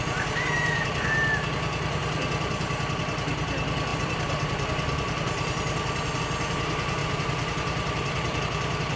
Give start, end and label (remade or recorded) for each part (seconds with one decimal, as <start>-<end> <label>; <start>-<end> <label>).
0.0-3.9 recorded; 3.9-6.2 remade; 6.2-7.0 recorded; 7.0-8.4 remade; 8.4-9.0 recorded